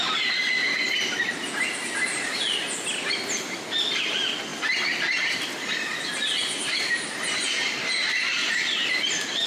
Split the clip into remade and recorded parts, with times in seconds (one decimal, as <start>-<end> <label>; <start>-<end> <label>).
0.0-8.4 recorded; 8.4-9.5 remade